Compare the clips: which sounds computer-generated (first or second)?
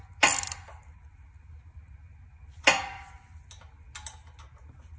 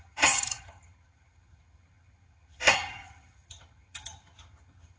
second